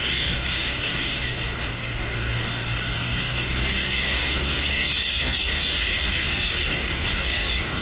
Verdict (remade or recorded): remade